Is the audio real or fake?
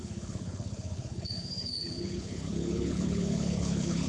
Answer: fake